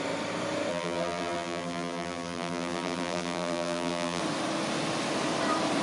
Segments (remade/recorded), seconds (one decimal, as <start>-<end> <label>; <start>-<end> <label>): 0.0-0.7 recorded; 0.7-4.2 remade; 4.2-5.8 recorded